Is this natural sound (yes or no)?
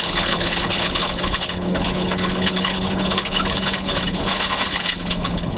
no